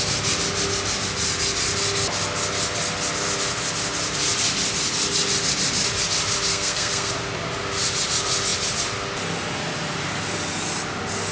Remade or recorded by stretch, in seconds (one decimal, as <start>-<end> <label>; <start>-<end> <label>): 0.0-6.5 recorded; 6.5-7.1 remade; 7.1-11.3 recorded